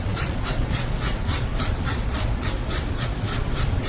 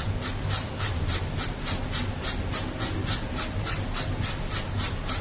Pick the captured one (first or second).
second